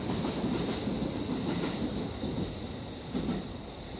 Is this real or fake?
real